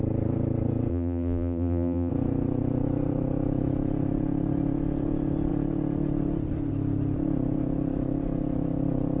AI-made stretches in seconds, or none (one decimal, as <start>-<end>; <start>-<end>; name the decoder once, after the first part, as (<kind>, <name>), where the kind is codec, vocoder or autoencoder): 0.9-2.1 (vocoder, BigVGAN v2)